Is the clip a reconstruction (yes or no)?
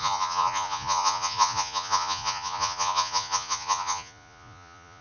yes